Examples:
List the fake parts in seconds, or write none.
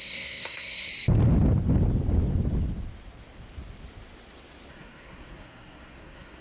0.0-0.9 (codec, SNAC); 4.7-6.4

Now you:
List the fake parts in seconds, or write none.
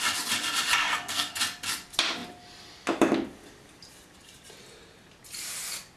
0.8-1.4 (codec, SNAC)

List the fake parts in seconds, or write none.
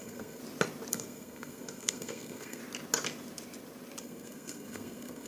0.0-0.4 (codec, SNAC); 0.9-2.6; 4.0-5.3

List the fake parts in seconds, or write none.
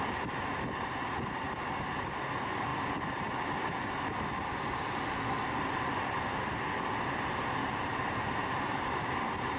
none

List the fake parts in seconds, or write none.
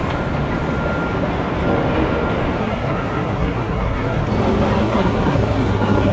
2.6-4.3 (codec, SNAC); 4.8-6.1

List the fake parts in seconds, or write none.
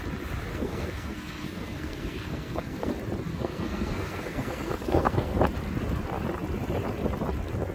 0.5-2.9 (codec, SNAC); 3.3-5.4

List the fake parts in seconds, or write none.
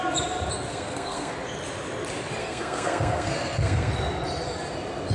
0.7-1.3 (codec, SNAC); 2.4-3.9